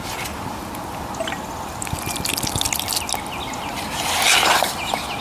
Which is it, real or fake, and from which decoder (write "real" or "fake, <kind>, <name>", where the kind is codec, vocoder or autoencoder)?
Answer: real